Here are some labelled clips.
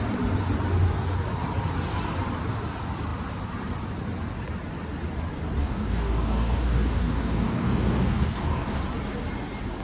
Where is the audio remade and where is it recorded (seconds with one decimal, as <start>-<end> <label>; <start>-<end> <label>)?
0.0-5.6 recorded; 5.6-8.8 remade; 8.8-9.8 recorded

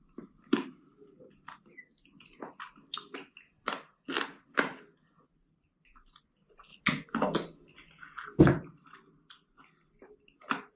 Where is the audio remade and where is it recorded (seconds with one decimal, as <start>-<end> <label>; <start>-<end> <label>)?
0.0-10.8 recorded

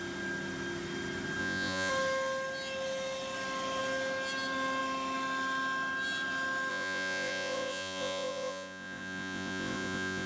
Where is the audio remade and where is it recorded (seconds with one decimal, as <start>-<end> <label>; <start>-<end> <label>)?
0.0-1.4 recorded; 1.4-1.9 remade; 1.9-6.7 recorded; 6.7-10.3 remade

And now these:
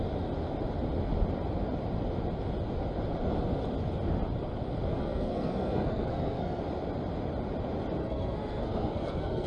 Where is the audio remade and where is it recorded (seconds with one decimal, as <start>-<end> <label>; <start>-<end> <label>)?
0.0-4.9 recorded; 4.9-6.6 remade; 6.6-8.0 recorded; 8.0-9.5 remade

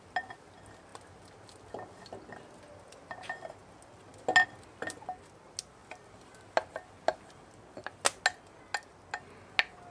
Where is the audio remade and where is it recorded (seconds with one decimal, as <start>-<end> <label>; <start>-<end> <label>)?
0.0-9.9 recorded

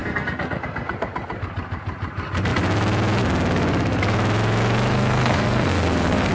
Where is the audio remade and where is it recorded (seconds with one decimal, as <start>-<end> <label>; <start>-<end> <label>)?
0.0-0.9 remade; 0.9-4.9 recorded; 4.9-6.3 remade

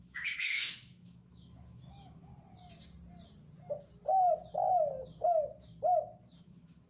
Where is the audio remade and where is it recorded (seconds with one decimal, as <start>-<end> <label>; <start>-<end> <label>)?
0.0-2.3 remade; 2.3-6.4 recorded; 6.4-6.9 remade